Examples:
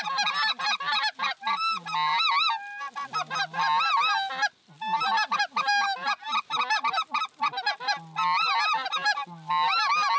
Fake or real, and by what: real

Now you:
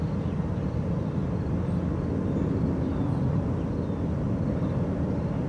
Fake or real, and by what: real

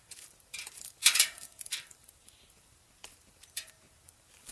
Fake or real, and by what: fake, vocoder, BigVGAN v2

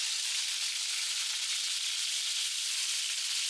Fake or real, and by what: real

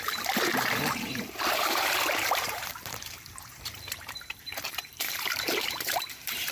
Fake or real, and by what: fake, vocoder, BigVGAN v2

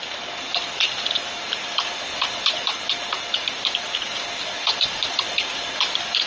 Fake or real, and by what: fake, vocoder, BigVGAN v2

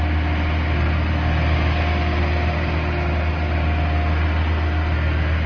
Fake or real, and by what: real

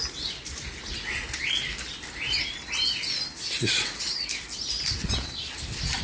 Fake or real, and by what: real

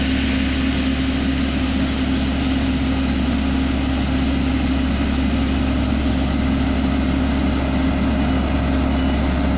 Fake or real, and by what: real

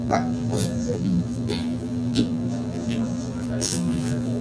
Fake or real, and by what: fake, vocoder, BigVGAN v2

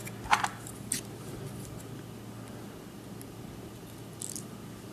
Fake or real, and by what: real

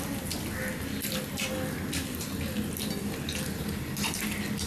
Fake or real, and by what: real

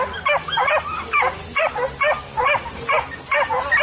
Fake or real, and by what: real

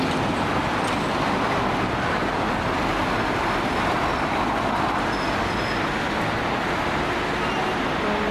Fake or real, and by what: real